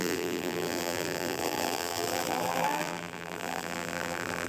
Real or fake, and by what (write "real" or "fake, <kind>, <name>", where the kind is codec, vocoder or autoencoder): fake, vocoder, BigVGAN v2